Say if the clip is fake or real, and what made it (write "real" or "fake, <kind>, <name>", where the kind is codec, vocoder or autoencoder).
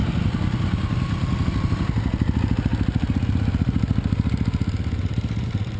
real